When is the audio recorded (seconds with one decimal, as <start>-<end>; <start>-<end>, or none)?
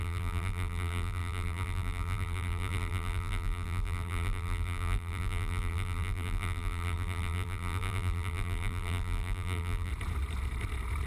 9.9-11.1